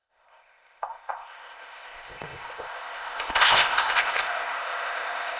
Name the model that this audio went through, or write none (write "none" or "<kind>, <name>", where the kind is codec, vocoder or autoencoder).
codec, ZipCodec